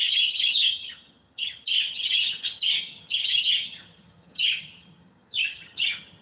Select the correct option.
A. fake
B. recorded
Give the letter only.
A